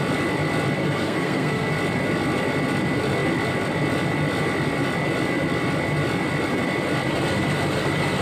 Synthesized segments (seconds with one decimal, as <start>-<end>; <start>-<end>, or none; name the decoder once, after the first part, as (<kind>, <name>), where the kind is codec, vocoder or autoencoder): 0.8-1.7 (codec, SNAC)